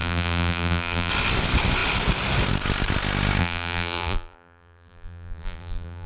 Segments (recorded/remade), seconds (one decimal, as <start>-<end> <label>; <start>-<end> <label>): 0.0-1.1 remade; 1.1-3.4 recorded; 3.4-6.1 remade